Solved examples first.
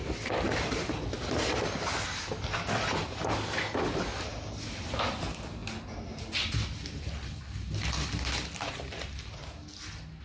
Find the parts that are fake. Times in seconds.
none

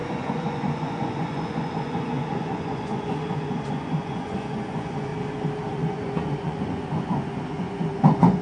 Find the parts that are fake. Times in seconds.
0.0-5.1 (vocoder, Vocos); 5.7-8.4